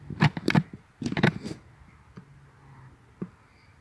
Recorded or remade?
recorded